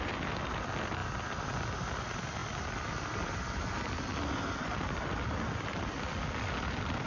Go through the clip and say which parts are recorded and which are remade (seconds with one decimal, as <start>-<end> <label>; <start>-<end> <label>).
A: 0.0-7.1 recorded